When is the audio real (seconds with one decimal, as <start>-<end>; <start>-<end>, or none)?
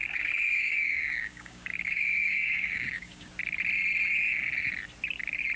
3.3-5.6